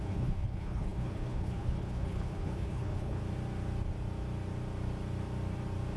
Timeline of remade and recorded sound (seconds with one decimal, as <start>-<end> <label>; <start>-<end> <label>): 0.0-3.2 remade; 3.2-6.0 recorded